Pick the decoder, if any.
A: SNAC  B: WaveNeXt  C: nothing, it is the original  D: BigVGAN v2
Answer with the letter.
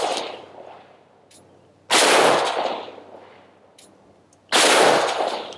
C